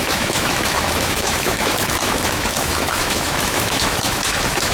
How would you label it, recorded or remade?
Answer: remade